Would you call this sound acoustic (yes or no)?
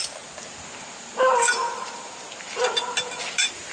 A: yes